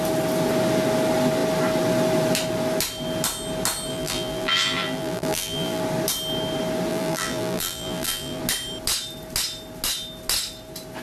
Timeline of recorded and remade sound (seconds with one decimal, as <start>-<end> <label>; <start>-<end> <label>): 0.0-3.9 recorded; 3.9-5.8 remade; 5.8-6.9 recorded; 6.9-8.4 remade; 8.4-11.0 recorded